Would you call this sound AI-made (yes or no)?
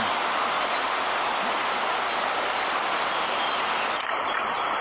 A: no